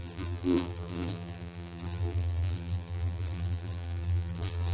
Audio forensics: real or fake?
fake